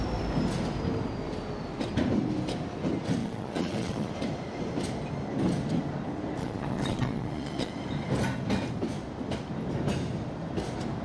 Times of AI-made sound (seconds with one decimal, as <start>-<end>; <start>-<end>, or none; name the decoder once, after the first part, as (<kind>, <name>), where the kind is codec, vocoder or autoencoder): 3.2-4.1 (vocoder, Vocos); 6.4-7.7